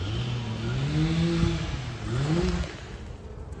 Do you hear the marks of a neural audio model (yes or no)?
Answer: no